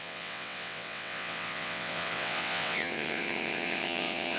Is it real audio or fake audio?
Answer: fake